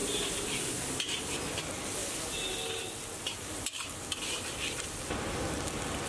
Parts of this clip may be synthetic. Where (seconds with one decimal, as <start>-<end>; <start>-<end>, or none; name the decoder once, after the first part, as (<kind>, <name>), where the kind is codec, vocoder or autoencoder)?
none